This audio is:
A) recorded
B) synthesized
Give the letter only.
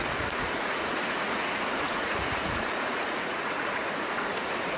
B